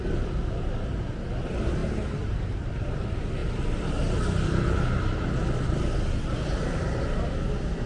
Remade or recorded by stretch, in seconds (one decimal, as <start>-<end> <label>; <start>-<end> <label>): 0.0-1.8 recorded; 1.8-2.9 remade; 2.9-7.9 recorded